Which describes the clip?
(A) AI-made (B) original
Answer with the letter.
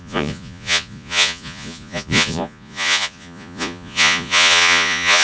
A